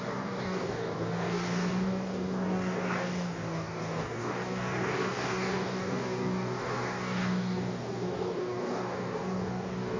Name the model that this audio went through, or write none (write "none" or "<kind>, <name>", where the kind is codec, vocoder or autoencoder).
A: codec, DAC